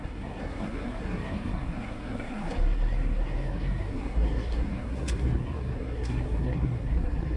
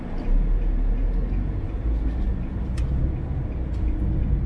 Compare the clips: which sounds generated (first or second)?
first